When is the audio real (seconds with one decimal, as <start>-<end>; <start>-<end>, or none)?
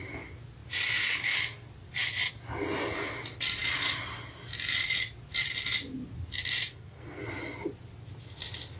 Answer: 0.0-6.7; 7.2-8.8